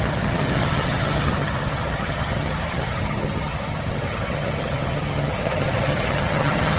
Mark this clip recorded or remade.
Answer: remade